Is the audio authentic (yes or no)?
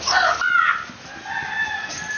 yes